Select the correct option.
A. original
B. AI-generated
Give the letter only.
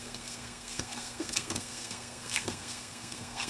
B